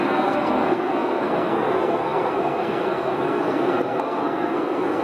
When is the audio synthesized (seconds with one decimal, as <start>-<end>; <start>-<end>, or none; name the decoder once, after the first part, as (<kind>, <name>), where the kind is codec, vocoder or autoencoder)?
0.0-5.0 (codec, SNAC)

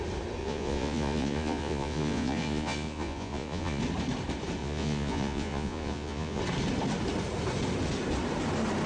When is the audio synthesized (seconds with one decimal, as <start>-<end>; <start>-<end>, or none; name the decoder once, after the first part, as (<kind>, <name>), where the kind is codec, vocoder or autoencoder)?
0.4-3.8 (vocoder, Vocos); 4.6-6.4

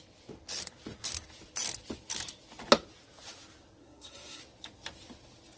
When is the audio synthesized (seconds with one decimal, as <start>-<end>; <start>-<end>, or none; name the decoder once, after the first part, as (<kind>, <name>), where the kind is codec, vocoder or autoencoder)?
3.8-4.4 (codec, SNAC)

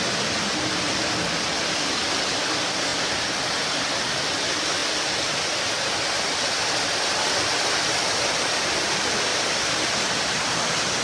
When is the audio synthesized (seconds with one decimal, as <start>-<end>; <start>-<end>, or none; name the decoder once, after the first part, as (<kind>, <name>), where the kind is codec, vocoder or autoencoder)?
0.0-2.9 (vocoder, BigVGAN v2); 4.1-9.3; 10.1-11.0

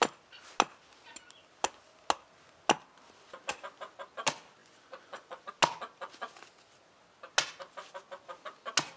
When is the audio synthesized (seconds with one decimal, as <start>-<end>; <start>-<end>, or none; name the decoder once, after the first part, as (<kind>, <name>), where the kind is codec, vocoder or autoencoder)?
4.6-5.5 (vocoder, Vocos)

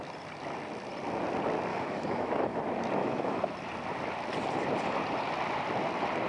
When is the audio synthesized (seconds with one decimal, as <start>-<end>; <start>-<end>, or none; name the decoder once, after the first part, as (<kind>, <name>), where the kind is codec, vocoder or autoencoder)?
1.7-2.6 (autoencoder, DAC-VAE); 3.0-3.5